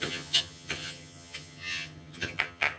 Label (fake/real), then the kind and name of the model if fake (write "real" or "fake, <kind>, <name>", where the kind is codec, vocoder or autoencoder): fake, vocoder, HiFi-GAN